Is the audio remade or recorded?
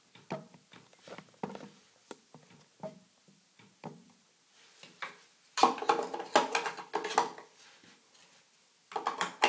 recorded